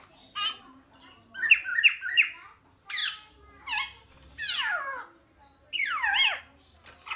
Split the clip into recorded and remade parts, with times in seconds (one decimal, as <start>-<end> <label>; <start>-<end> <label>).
0.0-7.2 recorded